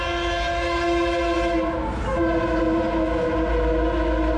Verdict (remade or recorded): recorded